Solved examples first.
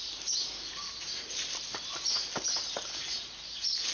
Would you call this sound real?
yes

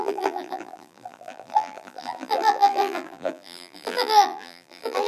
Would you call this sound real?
no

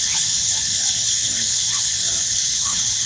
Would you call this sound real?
no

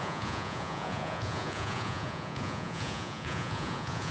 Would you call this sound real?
no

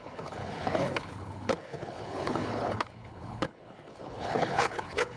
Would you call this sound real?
no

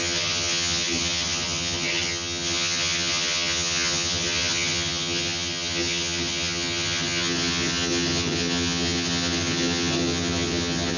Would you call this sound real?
no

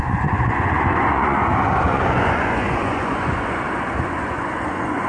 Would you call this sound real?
no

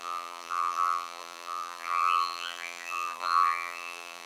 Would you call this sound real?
no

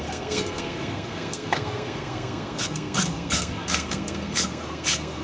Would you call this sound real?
no